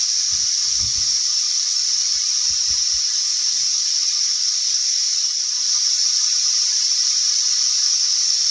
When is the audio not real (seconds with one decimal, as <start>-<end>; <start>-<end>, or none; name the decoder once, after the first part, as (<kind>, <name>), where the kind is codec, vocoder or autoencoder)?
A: 0.0-2.1 (autoencoder, DAC-VAE); 3.0-5.4; 7.8-8.5